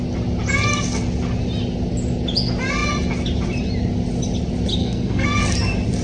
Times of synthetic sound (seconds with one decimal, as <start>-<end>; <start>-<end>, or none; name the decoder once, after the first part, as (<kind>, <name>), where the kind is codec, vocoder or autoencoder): 4.8-5.4 (codec, SNAC)